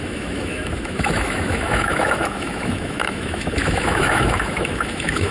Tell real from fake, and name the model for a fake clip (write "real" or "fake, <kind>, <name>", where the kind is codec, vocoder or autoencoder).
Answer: fake, autoencoder, DAC-VAE